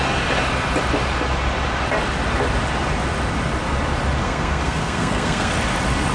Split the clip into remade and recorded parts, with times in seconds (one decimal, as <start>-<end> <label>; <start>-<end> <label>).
0.0-4.2 recorded; 4.2-5.5 remade; 5.5-6.1 recorded

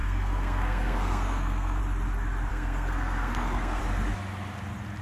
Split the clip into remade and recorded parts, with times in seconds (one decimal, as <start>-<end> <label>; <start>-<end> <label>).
0.0-1.8 remade; 1.8-2.5 recorded; 2.5-3.8 remade; 3.8-5.0 recorded

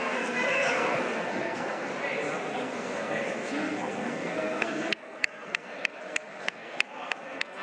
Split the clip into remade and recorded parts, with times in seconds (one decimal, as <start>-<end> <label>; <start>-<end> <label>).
0.0-1.9 remade; 1.9-2.6 recorded; 2.6-7.6 remade

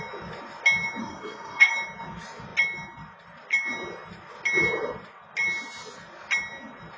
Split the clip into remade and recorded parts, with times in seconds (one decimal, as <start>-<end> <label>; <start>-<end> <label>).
0.0-1.0 recorded; 1.0-1.7 remade; 1.7-7.0 recorded